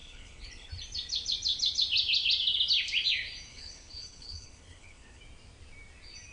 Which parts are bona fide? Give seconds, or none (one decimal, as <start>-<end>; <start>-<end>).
0.7-3.5; 5.2-6.3